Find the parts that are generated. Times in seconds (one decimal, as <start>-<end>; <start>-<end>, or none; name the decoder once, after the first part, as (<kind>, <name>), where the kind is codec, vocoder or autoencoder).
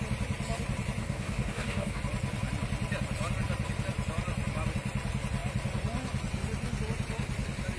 1.0-2.0 (codec, DAC)